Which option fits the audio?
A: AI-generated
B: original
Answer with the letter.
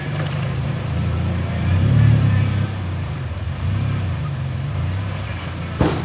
A